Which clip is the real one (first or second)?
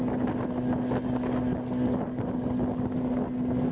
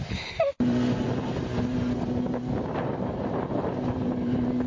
first